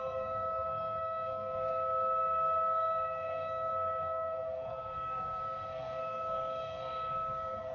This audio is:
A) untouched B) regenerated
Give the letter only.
B